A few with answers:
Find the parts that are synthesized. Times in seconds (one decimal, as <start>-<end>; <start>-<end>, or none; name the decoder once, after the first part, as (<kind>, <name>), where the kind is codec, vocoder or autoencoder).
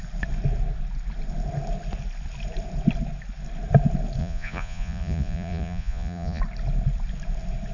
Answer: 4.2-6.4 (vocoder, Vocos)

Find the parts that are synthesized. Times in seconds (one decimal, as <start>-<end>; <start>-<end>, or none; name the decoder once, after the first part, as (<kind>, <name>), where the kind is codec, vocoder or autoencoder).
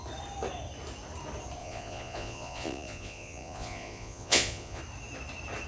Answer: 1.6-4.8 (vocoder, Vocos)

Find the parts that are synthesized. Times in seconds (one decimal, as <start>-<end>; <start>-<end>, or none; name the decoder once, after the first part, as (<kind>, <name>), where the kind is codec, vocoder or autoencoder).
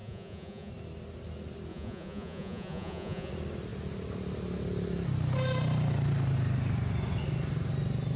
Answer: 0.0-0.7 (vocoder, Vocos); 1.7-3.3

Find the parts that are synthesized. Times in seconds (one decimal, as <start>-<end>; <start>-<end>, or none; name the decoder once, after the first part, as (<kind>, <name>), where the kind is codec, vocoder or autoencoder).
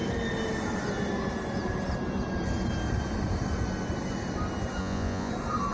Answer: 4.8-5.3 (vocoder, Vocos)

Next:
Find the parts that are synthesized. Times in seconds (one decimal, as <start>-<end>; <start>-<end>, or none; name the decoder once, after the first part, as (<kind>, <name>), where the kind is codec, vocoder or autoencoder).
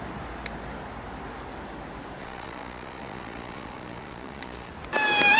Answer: 2.2-4.7 (vocoder, Vocos)